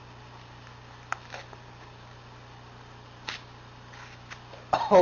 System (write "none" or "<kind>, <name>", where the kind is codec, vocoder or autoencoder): none